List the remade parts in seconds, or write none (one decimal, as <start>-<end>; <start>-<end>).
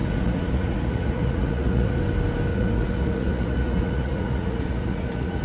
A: 0.0-2.0; 2.5-5.4